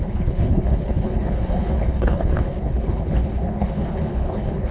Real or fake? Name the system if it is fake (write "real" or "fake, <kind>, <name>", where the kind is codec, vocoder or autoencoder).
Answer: fake, codec, HILCodec